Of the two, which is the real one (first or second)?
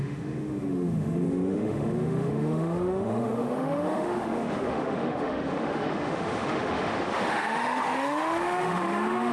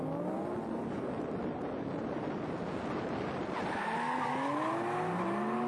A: second